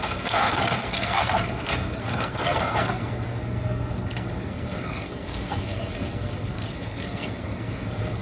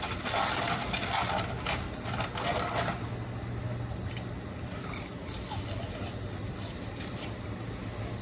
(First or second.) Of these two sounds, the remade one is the first